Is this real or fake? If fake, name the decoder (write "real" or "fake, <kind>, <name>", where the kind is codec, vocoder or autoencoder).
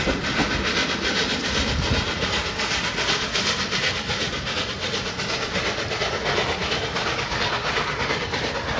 real